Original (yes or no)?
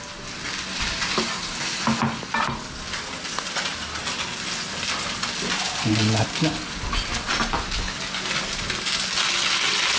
yes